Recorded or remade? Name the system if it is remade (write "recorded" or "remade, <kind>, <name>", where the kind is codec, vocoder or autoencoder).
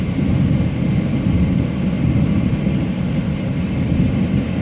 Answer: recorded